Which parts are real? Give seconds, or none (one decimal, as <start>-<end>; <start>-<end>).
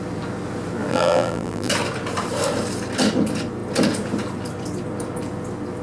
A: 0.0-0.9; 1.7-5.8